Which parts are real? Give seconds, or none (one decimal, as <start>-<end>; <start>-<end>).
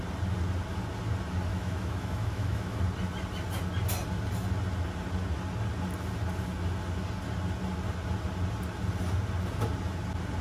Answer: 0.0-1.5; 2.8-10.4